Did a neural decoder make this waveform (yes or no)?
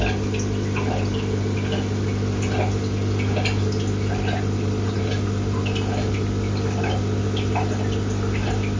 no